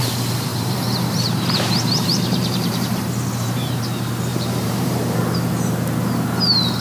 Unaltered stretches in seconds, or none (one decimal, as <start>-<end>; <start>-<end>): 0.0-0.5; 3.8-4.3; 5.2-6.8